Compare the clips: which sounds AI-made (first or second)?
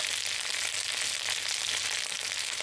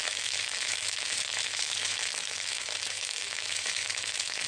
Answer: second